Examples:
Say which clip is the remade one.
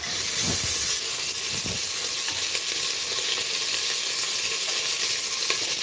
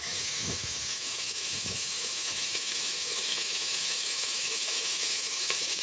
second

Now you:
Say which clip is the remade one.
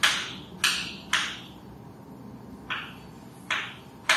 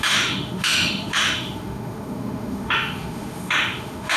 second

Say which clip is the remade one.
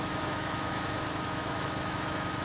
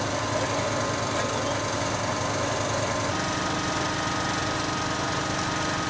first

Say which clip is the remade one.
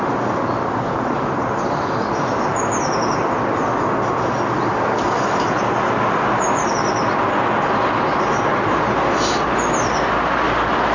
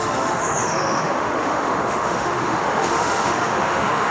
second